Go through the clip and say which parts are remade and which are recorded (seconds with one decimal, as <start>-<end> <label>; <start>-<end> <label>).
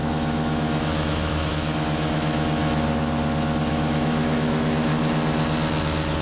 0.0-2.6 remade; 2.6-3.7 recorded; 3.7-4.9 remade; 4.9-6.2 recorded